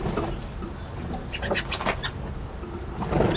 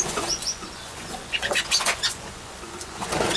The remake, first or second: second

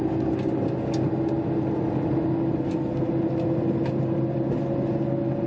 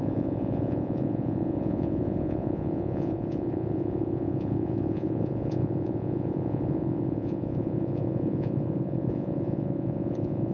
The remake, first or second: second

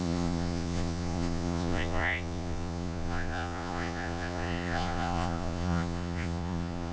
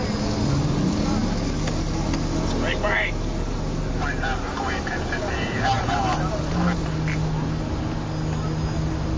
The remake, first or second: first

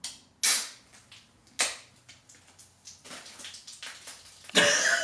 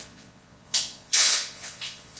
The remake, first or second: second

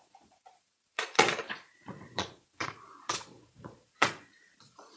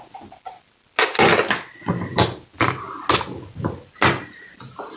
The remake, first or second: first